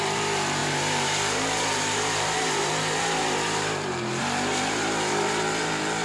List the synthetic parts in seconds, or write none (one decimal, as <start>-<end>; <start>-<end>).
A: 0.0-6.0